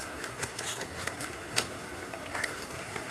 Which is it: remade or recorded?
remade